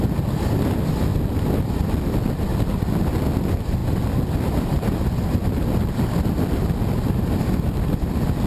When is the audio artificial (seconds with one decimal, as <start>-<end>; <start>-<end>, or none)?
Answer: none